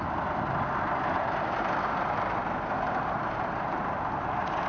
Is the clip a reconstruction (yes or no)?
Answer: no